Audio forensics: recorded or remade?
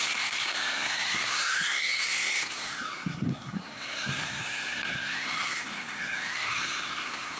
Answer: remade